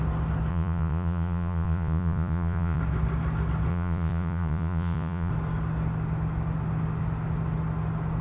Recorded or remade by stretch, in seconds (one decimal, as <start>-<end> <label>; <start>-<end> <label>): 0.0-0.5 recorded; 0.5-2.8 remade; 2.8-3.7 recorded; 3.7-5.3 remade; 5.3-8.2 recorded